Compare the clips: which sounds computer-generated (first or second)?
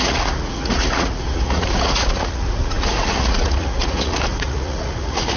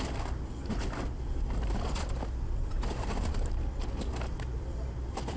first